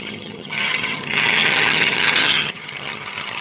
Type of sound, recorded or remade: remade